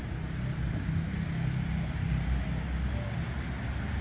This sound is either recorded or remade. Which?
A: recorded